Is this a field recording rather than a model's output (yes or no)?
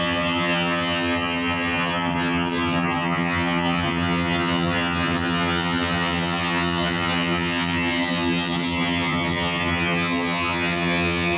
no